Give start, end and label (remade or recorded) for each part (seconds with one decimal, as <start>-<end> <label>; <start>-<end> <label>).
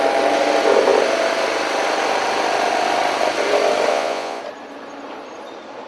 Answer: 0.0-3.9 recorded; 3.9-4.4 remade; 4.4-5.9 recorded